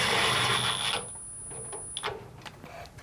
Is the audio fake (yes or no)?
no